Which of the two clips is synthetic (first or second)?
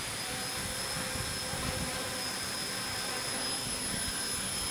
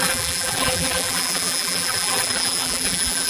second